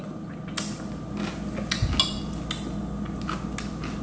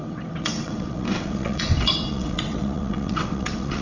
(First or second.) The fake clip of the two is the second